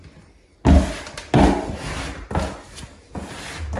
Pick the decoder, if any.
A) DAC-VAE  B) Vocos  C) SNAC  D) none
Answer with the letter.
D